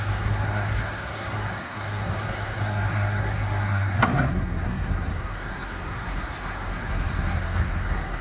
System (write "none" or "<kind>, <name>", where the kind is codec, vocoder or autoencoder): codec, SNAC